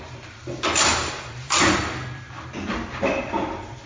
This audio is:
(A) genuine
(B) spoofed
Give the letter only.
A